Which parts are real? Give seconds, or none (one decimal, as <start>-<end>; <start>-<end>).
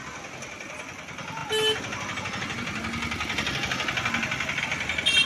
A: 0.0-5.3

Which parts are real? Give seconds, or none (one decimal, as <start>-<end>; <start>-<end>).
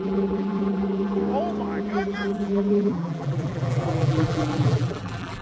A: 1.2-1.8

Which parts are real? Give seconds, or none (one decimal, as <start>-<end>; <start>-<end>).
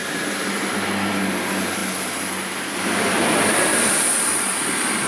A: 0.0-1.1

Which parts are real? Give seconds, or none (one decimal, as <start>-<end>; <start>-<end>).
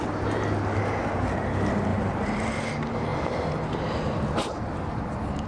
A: 0.0-1.9; 2.5-5.5